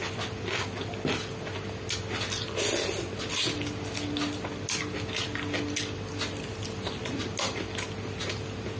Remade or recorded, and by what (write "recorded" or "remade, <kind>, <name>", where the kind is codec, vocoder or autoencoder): recorded